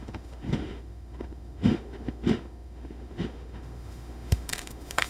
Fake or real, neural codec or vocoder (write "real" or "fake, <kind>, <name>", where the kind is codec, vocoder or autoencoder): fake, autoencoder, DAC-VAE